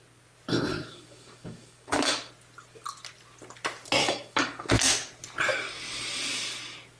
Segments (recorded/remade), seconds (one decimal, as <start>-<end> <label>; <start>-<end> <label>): 0.0-0.5 recorded; 0.5-2.3 remade; 2.3-4.0 recorded; 4.0-4.7 remade; 4.7-7.0 recorded